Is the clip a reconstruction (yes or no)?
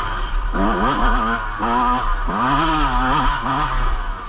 no